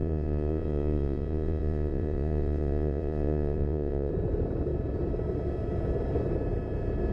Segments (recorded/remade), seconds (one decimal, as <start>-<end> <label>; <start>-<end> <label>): 0.0-4.1 remade; 4.1-7.1 recorded